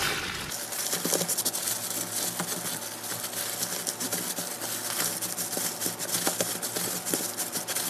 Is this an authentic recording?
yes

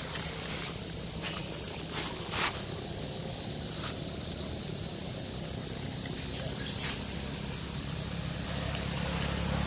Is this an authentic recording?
yes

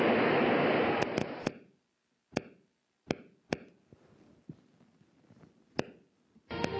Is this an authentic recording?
yes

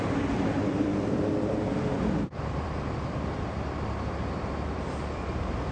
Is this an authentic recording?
no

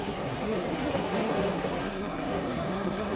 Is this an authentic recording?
no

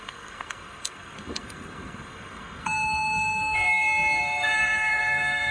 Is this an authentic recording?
no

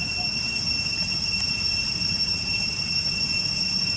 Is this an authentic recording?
yes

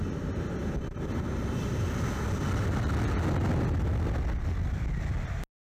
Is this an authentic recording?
yes